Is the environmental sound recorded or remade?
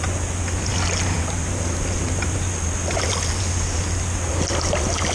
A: recorded